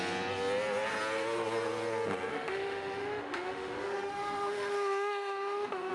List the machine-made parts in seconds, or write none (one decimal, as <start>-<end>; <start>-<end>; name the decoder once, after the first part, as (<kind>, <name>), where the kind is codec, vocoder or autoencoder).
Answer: 2.3-5.9 (autoencoder, DAC-VAE)